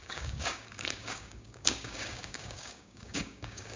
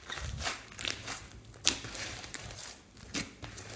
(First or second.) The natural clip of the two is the second